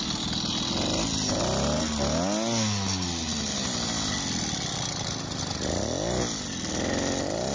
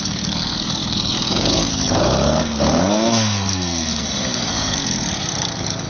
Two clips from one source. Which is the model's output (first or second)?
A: second